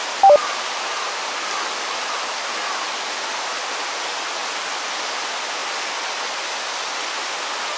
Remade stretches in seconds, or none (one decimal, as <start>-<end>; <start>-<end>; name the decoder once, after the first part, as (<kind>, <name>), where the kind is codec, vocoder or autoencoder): none